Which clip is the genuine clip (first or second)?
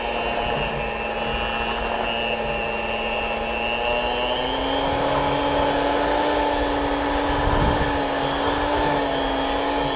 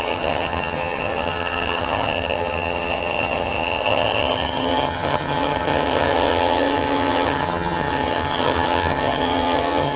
first